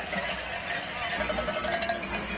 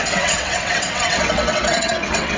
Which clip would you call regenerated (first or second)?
second